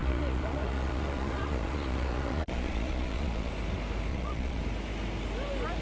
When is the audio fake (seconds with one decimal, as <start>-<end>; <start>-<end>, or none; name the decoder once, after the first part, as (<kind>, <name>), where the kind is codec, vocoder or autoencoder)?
0.0-3.5 (vocoder, Vocos); 4.1-4.6